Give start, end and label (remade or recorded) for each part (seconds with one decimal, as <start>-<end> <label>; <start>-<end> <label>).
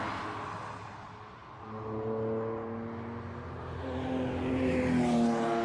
0.0-5.6 recorded